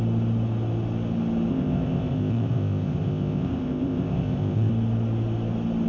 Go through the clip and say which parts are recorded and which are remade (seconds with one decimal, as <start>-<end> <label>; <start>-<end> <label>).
0.0-1.5 recorded; 1.5-4.7 remade; 4.7-5.9 recorded

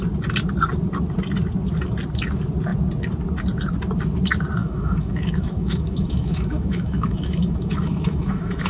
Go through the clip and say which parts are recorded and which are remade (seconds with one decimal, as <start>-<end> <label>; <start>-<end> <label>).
0.0-4.6 recorded; 4.6-8.7 remade

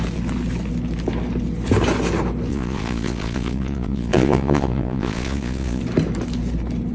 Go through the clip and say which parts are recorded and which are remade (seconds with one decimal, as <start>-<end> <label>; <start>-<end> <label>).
0.0-2.5 recorded; 2.5-5.8 remade; 5.8-6.9 recorded

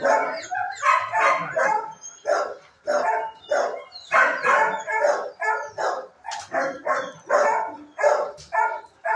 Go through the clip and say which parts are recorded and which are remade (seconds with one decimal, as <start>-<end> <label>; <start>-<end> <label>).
0.0-9.2 recorded